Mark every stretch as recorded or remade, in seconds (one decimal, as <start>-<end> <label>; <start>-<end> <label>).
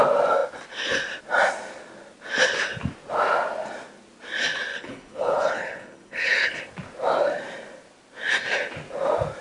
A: 0.0-4.7 recorded; 4.7-6.6 remade; 6.6-9.4 recorded